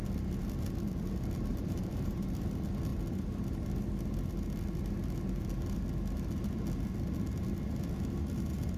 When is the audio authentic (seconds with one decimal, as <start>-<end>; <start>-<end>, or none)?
0.0-1.5; 2.2-8.8

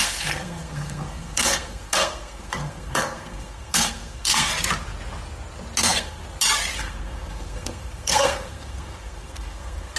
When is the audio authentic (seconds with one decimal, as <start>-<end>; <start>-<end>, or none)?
4.5-5.8; 6.2-6.8

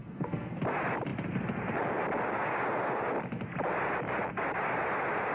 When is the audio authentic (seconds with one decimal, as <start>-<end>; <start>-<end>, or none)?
0.6-5.3

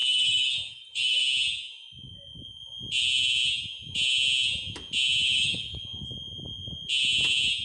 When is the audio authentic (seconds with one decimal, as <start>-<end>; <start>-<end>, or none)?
1.2-5.2; 5.8-7.6

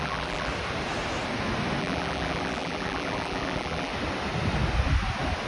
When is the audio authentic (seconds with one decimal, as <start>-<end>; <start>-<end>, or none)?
0.5-1.8; 3.9-5.5

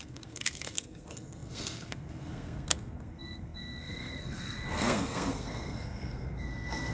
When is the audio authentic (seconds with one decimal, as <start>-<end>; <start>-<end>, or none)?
none

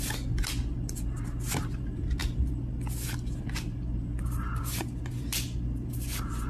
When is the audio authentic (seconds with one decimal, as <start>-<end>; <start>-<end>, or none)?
0.0-6.5

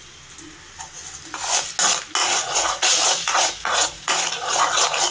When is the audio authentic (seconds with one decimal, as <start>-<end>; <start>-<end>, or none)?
0.0-2.2; 4.6-5.1